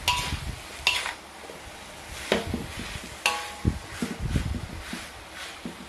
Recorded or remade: recorded